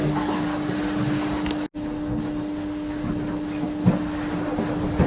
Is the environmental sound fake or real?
real